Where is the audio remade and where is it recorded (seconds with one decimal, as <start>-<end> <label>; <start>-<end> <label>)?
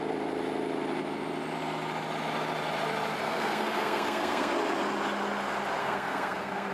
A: 0.0-3.3 recorded; 3.3-4.5 remade; 4.5-5.8 recorded; 5.8-6.7 remade